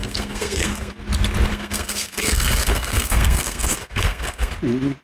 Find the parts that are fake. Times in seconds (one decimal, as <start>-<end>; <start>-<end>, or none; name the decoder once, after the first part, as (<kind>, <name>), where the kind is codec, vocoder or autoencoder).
0.0-0.9 (codec, SNAC); 1.5-4.5